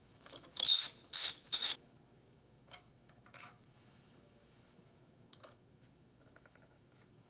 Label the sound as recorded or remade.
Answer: remade